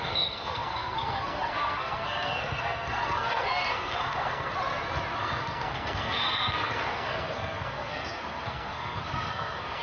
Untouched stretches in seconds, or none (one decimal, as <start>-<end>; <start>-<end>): 4.5-5.2